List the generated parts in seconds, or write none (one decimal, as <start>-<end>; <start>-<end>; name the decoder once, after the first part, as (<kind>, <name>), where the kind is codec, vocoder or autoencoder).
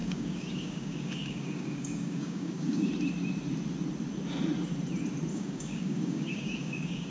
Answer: 0.0-2.9 (codec, DAC); 5.3-7.1